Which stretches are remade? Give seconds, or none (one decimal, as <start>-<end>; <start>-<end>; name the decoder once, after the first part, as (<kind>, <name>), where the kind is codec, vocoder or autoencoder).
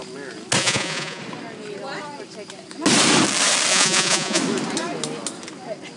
0.6-1.2 (vocoder, Vocos); 3.7-4.4